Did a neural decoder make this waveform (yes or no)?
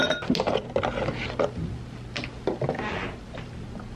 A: no